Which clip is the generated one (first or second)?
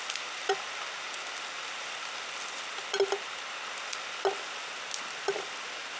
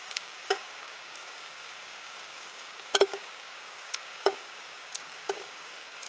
second